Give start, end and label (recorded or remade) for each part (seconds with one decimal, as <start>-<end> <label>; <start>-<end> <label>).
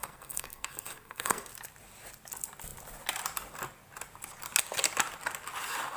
0.0-1.5 remade; 1.5-6.0 recorded